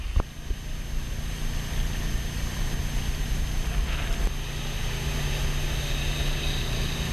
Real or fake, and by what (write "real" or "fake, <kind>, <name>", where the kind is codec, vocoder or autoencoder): real